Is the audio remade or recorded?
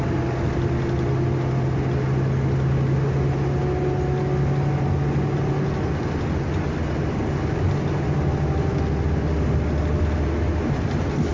recorded